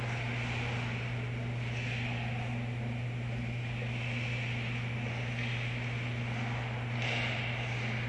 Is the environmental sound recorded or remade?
recorded